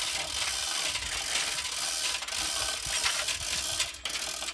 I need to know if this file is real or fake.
real